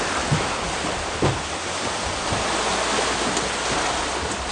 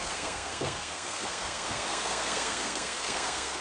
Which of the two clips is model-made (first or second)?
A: second